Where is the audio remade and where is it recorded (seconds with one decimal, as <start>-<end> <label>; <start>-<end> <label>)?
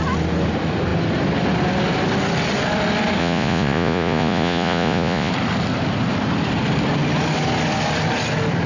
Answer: 0.0-3.2 recorded; 3.2-5.3 remade; 5.3-8.7 recorded